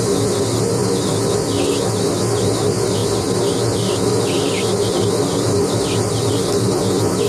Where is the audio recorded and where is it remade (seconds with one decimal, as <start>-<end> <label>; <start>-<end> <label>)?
0.0-7.3 recorded